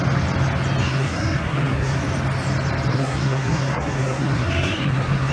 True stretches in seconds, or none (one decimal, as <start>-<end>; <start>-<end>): 0.0-0.8; 2.0-2.9